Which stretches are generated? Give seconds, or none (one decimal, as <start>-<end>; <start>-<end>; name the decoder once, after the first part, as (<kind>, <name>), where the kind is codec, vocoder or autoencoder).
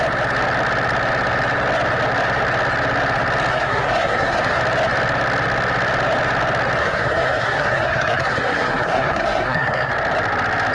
3.5-4.6 (codec, SNAC); 6.8-9.9